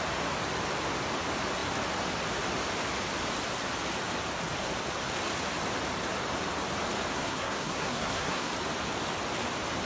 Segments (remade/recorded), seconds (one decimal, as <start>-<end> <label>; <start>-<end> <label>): 0.0-7.1 recorded; 7.1-8.5 remade; 8.5-9.9 recorded